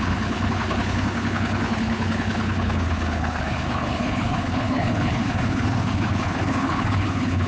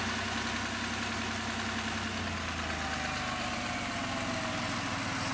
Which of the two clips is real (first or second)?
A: second